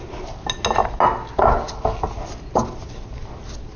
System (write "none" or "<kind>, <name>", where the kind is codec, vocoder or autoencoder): none